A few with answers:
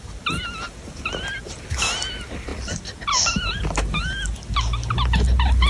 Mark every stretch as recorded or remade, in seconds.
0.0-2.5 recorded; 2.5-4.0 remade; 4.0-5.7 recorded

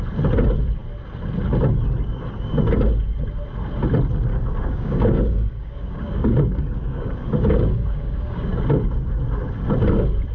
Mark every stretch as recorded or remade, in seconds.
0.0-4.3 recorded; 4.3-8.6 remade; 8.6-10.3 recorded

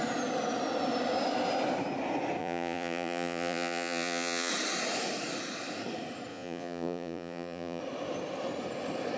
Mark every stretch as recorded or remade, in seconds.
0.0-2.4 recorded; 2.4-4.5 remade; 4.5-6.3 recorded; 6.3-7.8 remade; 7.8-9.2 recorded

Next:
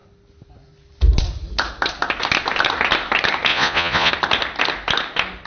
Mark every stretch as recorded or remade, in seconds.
0.0-3.5 recorded; 3.5-4.1 remade; 4.1-5.5 recorded

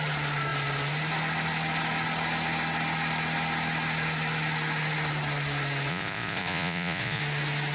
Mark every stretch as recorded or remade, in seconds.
0.0-5.9 recorded; 5.9-7.2 remade; 7.2-7.7 recorded